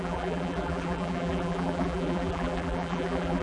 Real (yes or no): no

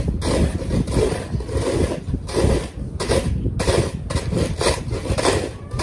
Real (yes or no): yes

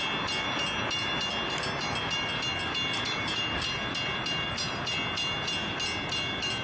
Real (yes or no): yes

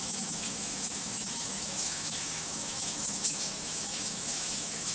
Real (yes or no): no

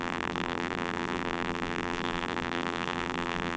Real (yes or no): no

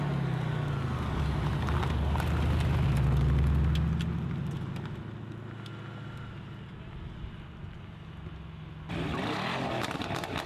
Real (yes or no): yes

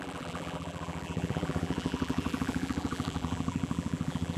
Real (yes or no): no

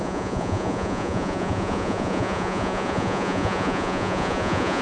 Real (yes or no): no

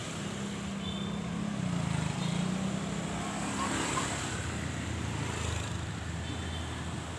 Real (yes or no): yes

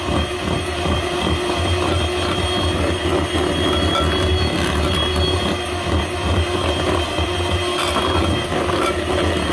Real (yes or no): yes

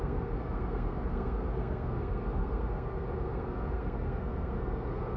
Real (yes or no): no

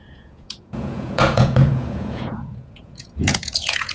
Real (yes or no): no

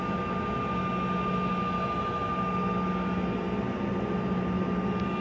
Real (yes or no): yes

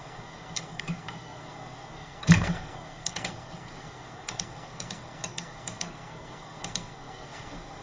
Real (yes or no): no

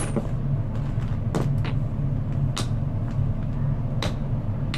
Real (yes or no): yes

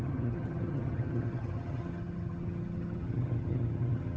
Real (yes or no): no